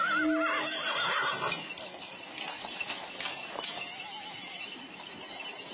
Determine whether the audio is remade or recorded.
recorded